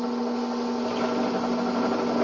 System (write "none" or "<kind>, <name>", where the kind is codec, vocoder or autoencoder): none